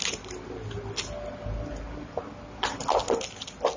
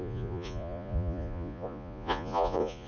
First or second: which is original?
first